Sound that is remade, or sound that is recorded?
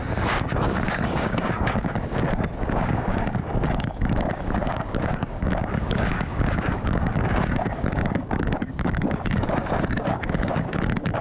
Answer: remade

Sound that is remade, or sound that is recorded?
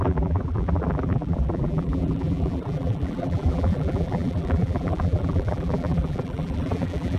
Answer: remade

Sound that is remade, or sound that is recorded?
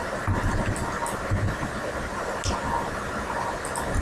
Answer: recorded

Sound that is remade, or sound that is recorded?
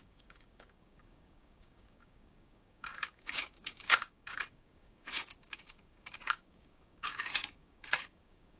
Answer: remade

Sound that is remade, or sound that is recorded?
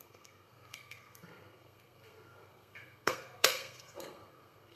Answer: remade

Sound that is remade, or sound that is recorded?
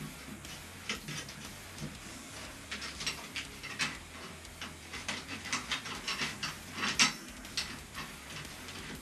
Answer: recorded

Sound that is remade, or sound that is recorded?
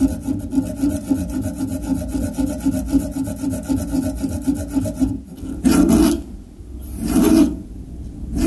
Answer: recorded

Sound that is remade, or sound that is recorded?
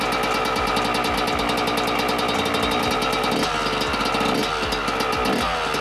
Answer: recorded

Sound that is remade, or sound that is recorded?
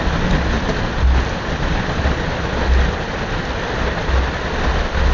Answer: recorded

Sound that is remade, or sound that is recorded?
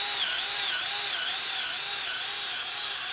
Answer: recorded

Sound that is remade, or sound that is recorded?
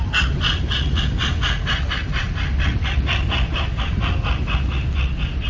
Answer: recorded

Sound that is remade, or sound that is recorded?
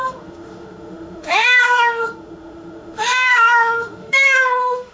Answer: remade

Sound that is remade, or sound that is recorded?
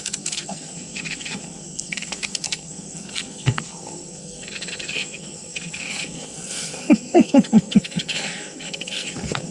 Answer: remade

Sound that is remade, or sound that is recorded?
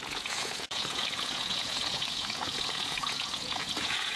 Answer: remade